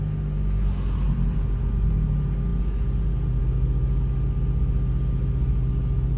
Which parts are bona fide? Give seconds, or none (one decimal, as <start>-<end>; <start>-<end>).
0.0-6.2